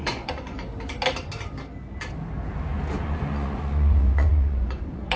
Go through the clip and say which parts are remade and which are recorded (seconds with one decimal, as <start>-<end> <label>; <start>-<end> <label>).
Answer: 0.0-0.7 remade; 0.7-3.0 recorded; 3.0-5.2 remade